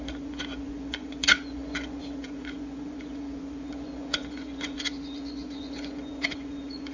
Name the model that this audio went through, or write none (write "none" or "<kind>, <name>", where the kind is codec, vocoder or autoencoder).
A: vocoder, Vocos